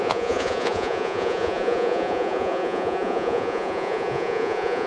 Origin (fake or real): fake